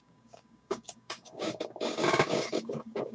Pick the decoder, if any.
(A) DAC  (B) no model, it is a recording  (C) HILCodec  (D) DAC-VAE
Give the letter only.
A